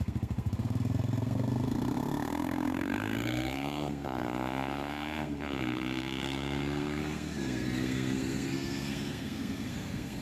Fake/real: fake